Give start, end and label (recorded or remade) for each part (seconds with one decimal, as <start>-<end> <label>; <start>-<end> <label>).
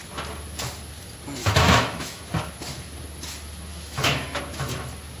0.0-1.4 recorded; 1.4-2.2 remade; 2.2-3.7 recorded; 3.7-4.4 remade; 4.4-5.2 recorded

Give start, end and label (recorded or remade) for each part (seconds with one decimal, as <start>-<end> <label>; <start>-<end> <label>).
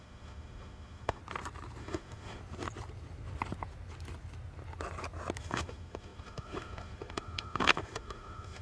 0.0-1.2 remade; 1.2-1.8 recorded; 1.8-2.4 remade; 2.4-5.4 recorded; 5.4-8.6 remade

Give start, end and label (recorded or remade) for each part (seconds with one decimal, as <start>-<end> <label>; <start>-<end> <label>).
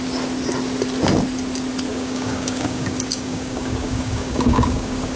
0.0-1.9 recorded; 1.9-5.2 remade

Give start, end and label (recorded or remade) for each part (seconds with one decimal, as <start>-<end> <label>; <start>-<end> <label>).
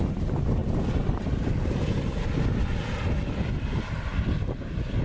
0.0-0.6 recorded; 0.6-2.0 remade; 2.0-5.0 recorded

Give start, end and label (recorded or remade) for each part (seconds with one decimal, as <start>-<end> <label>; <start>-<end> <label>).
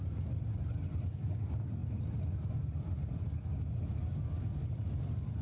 0.0-5.4 recorded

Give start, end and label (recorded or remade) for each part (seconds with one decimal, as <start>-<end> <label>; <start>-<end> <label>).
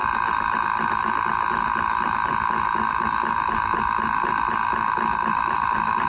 0.0-6.1 recorded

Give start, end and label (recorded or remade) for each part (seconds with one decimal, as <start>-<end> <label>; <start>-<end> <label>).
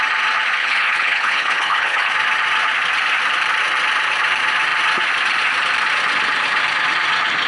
0.0-0.6 recorded; 0.6-2.1 remade; 2.1-7.5 recorded